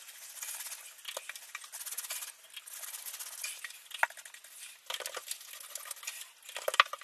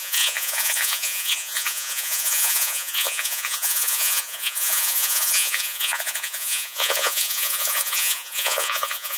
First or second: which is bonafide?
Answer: first